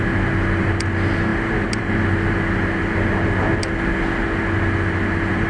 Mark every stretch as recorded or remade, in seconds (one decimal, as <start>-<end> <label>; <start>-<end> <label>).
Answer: 0.0-5.5 recorded